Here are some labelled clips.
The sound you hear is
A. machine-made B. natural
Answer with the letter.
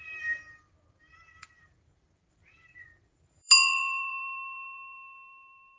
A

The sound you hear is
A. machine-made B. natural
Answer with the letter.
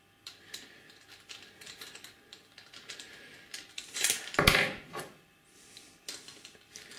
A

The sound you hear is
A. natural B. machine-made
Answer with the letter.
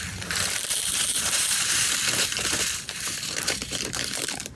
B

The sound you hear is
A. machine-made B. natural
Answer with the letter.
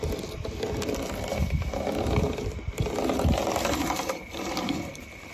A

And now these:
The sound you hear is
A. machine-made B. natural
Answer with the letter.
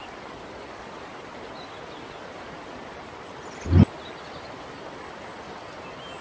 B